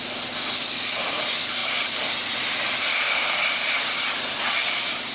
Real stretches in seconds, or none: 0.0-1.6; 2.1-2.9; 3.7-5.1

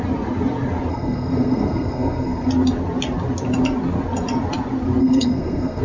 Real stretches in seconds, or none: 0.0-0.9; 2.5-5.0

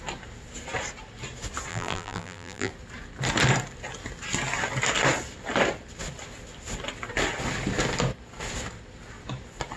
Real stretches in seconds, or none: 0.0-1.7; 2.7-9.8

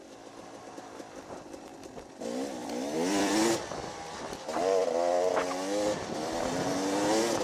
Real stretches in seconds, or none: 1.7-3.1